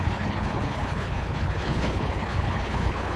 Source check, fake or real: fake